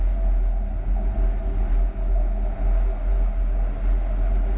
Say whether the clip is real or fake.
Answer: real